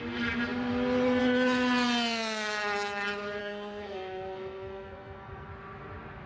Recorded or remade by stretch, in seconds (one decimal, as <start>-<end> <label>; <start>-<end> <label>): 0.0-3.4 recorded; 3.4-5.5 remade; 5.5-6.3 recorded